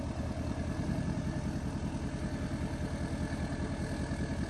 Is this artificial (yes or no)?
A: no